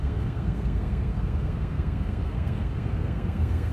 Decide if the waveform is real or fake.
fake